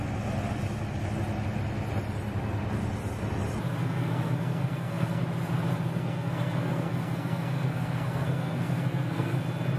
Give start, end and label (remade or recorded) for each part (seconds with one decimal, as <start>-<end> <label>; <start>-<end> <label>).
0.0-3.8 recorded; 3.8-5.2 remade; 5.2-5.9 recorded; 5.9-9.4 remade; 9.4-9.8 recorded